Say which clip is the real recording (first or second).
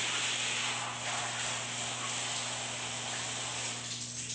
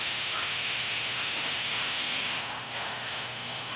first